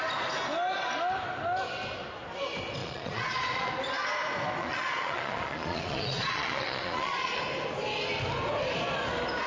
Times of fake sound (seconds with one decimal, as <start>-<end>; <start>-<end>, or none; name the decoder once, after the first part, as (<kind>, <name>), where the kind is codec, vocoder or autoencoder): 2.8-3.7 (vocoder, Vocos); 4.6-7.4